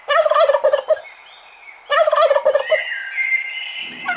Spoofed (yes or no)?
no